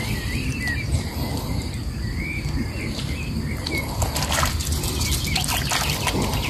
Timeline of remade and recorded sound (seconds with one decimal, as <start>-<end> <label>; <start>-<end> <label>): 0.0-6.5 recorded